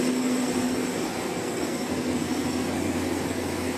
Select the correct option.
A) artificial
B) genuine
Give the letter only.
A